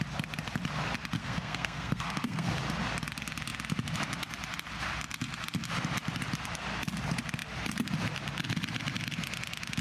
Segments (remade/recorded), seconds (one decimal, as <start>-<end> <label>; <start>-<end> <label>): 0.0-1.2 recorded; 1.2-2.5 remade; 2.5-9.8 recorded